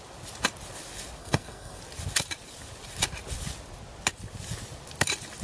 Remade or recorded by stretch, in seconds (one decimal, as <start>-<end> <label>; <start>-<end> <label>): 0.0-1.2 recorded; 1.2-1.8 remade; 1.8-5.4 recorded